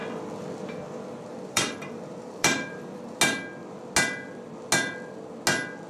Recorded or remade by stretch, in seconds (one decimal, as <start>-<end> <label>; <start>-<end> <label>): 0.0-1.3 recorded; 1.3-3.2 remade; 3.2-5.9 recorded